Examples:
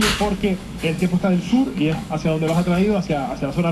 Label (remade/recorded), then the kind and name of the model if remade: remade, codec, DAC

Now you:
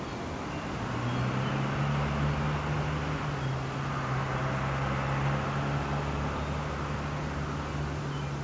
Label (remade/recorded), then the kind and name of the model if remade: recorded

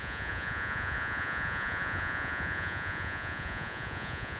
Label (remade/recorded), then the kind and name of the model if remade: remade, vocoder, Vocos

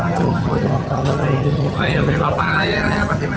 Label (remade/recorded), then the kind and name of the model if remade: remade, vocoder, HiFi-GAN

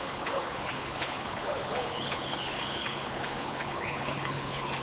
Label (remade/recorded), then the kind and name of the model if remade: remade, codec, HILCodec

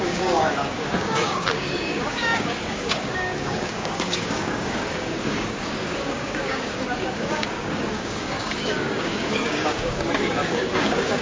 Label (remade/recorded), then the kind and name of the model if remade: remade, codec, DAC